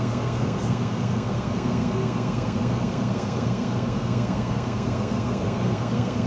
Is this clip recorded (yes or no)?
no